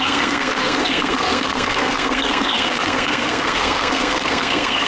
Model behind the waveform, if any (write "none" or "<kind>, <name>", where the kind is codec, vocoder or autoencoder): codec, SNAC